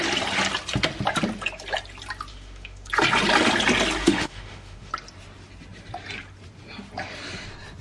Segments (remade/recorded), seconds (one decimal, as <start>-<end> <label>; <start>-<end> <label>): 0.0-2.3 recorded; 2.3-2.9 remade; 2.9-4.0 recorded; 4.0-4.9 remade; 4.9-7.8 recorded